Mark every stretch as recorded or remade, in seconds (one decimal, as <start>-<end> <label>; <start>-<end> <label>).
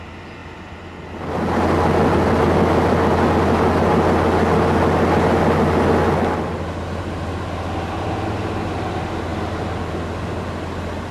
0.0-11.1 recorded